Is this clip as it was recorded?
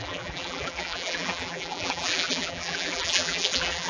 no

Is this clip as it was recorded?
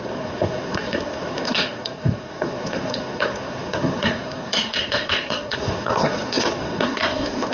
no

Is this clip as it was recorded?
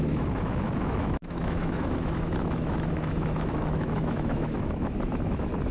no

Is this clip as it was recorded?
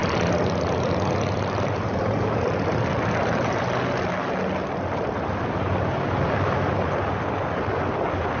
yes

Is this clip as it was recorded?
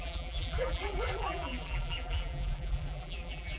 no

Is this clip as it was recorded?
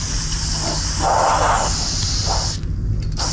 yes